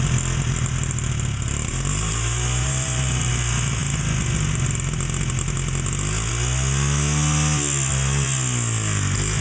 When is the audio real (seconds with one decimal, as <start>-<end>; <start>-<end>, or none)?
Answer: 0.0-1.7; 3.3-9.4